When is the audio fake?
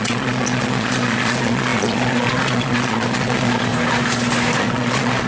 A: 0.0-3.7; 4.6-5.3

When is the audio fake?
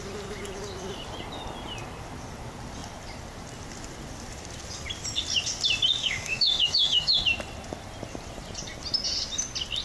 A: 6.0-7.2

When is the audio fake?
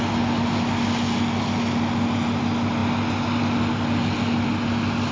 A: none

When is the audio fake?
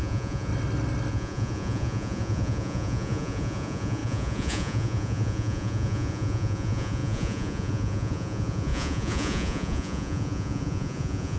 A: 0.0-0.5; 1.1-11.4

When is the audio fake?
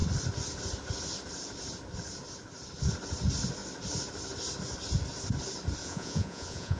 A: 5.8-6.8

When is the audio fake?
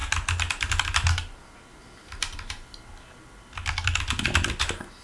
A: none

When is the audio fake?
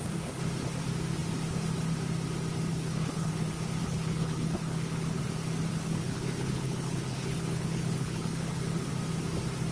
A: 2.7-3.3; 3.8-5.2; 5.7-8.9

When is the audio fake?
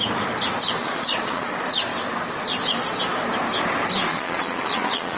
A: 0.8-1.5; 4.1-5.2